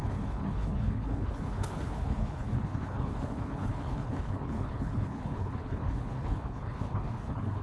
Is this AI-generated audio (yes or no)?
yes